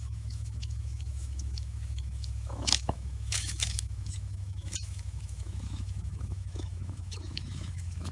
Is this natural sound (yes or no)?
no